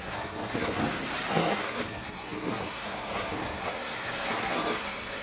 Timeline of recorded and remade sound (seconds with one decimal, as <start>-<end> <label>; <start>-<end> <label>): 0.0-0.8 remade; 0.8-1.3 recorded; 1.3-5.2 remade